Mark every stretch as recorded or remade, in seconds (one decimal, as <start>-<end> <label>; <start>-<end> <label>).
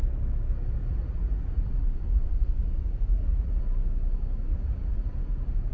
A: 0.0-0.8 recorded; 0.8-3.6 remade; 3.6-4.5 recorded; 4.5-5.2 remade; 5.2-5.7 recorded